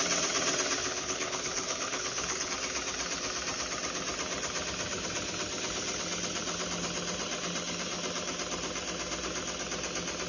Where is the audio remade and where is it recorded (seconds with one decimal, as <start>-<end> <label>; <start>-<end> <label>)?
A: 0.0-0.8 recorded; 0.8-2.5 remade; 2.5-10.3 recorded